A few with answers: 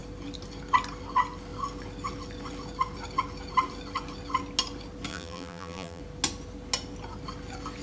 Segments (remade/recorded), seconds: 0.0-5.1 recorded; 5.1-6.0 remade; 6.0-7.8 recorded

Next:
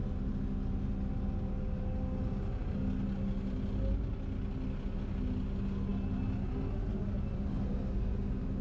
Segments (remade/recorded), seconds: 0.0-8.6 recorded

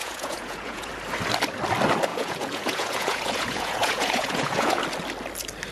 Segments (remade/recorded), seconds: 0.0-0.9 remade; 0.9-2.1 recorded; 2.1-4.8 remade; 4.8-5.7 recorded

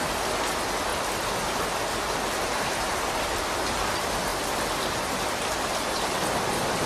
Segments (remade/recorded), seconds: 0.0-6.9 recorded

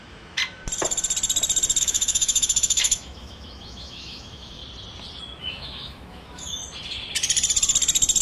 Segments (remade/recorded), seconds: 0.0-0.4 remade; 0.4-1.8 recorded; 1.8-4.6 remade; 4.6-5.4 recorded; 5.4-6.6 remade; 6.6-8.2 recorded